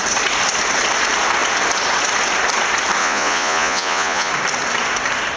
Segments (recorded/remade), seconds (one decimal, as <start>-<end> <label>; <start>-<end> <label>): 0.0-3.0 recorded; 3.0-4.3 remade; 4.3-5.4 recorded